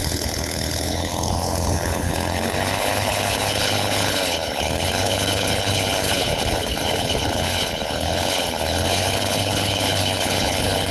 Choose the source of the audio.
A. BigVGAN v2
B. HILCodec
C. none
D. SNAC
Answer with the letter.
B